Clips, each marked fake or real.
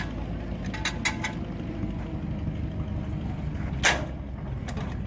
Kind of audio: real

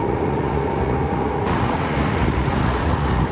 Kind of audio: fake